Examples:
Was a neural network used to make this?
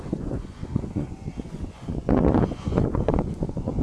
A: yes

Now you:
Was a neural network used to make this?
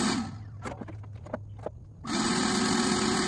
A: no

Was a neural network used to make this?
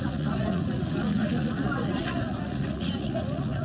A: yes